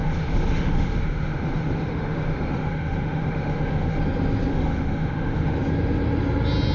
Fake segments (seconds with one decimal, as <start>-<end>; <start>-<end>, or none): 0.0-4.0; 4.5-5.6